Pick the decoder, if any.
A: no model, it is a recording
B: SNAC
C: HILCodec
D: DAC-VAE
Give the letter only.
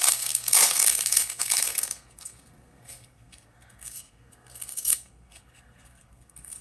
B